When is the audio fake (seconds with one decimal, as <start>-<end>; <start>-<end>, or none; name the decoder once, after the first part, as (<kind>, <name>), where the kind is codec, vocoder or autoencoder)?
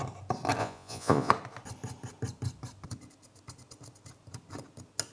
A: 0.6-1.3 (vocoder, Vocos)